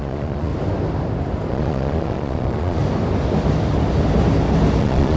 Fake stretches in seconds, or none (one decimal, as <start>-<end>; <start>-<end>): 0.0-0.5; 1.5-2.8; 4.8-5.2

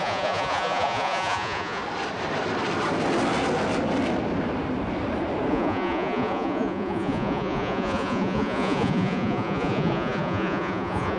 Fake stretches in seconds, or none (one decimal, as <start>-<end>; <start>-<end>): 0.0-1.8; 5.5-11.2

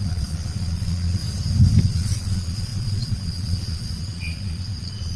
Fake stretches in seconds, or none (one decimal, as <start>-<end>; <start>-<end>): 0.0-1.2; 1.8-5.2

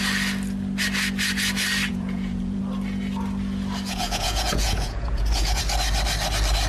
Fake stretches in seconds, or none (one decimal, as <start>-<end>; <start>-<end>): 1.9-2.6; 3.9-5.6

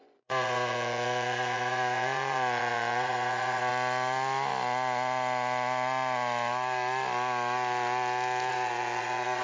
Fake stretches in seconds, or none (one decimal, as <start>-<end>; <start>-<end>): 0.0-3.7; 8.5-9.4

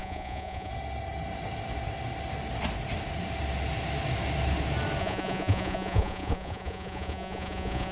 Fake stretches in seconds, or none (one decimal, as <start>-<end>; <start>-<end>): 0.0-0.7; 5.0-7.9

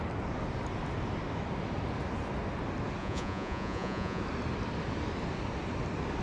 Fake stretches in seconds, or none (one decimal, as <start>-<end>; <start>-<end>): 3.0-4.2